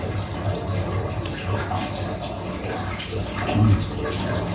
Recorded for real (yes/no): yes